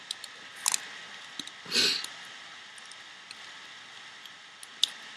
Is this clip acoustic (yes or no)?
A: yes